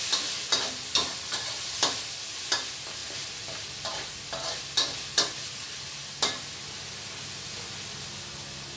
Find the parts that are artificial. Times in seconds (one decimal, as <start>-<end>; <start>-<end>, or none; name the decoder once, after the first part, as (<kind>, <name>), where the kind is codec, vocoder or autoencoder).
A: none